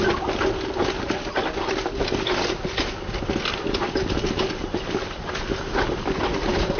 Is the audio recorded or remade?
recorded